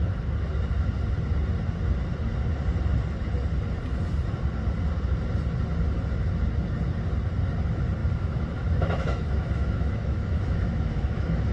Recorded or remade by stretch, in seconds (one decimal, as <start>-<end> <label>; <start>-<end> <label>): 0.0-8.0 recorded; 8.0-11.5 remade